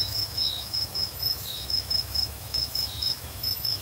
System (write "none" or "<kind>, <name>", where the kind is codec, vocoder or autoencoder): autoencoder, DAC-VAE